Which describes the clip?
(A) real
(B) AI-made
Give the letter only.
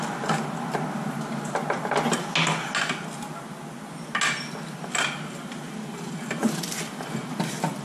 A